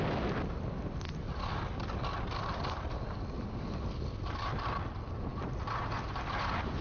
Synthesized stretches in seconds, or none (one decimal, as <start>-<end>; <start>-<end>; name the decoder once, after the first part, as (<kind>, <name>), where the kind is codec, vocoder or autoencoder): none